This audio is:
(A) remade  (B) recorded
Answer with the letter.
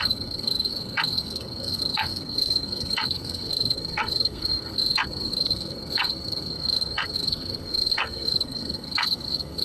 A